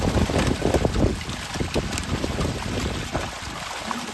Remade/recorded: recorded